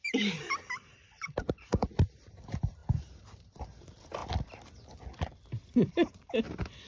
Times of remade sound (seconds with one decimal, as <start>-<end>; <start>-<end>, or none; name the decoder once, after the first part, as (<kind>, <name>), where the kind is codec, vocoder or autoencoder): 0.0-4.2 (vocoder, BigVGAN v2); 5.9-6.9